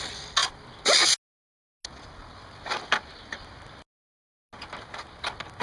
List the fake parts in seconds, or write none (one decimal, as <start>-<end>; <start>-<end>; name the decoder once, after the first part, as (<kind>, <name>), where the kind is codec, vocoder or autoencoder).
none